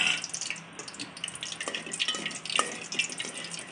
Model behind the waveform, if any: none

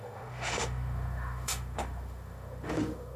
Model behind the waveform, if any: autoencoder, DAC-VAE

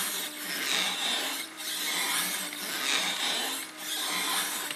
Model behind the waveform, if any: none